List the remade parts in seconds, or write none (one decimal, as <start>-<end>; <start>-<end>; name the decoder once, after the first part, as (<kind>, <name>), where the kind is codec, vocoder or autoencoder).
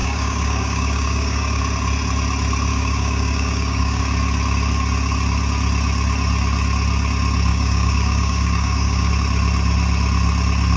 0.0-1.6 (codec, DAC); 2.7-4.0; 7.5-9.1